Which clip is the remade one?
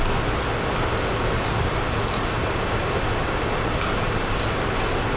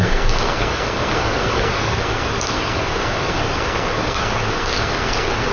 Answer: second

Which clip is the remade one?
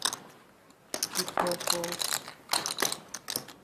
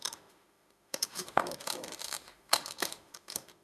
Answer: second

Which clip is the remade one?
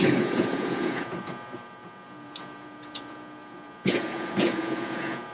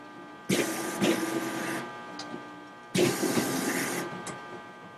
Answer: first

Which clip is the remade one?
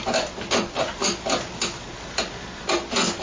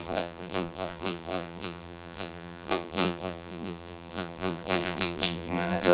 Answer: second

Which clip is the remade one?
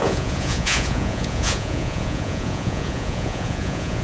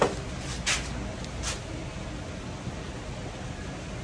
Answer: first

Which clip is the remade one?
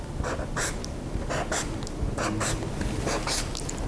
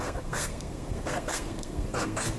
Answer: second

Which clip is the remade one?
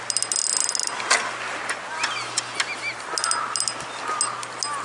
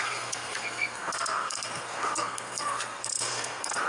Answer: second